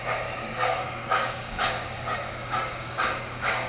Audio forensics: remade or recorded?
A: remade